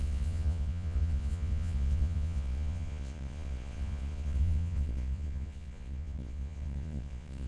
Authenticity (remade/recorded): remade